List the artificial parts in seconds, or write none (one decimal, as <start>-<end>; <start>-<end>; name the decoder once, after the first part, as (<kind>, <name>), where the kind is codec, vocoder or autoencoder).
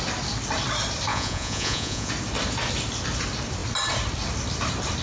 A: 1.1-2.1 (vocoder, Vocos)